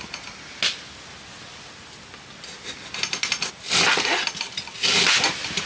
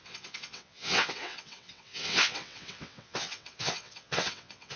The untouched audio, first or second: first